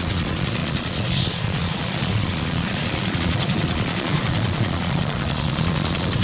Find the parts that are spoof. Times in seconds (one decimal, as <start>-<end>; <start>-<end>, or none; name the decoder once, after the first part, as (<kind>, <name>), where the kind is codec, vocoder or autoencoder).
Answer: 0.0-6.2 (vocoder, Vocos)